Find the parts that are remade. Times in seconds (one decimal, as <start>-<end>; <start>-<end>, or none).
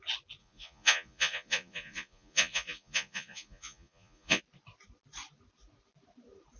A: 0.4-4.4